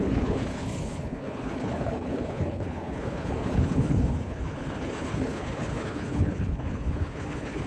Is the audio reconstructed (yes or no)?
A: yes